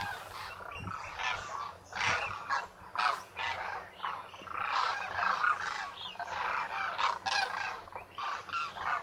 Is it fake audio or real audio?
real